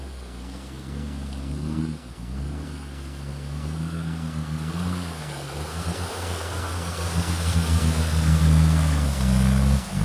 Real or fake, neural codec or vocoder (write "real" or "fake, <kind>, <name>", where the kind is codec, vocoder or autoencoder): fake, codec, SNAC